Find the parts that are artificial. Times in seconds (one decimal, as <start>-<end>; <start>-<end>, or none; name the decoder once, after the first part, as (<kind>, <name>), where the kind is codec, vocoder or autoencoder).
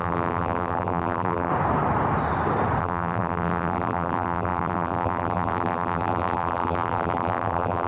0.0-1.5 (vocoder, BigVGAN v2); 2.8-7.9